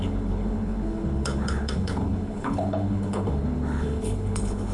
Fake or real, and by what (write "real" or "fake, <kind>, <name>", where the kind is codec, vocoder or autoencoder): fake, codec, HILCodec